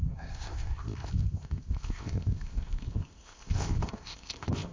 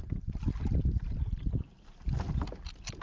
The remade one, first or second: first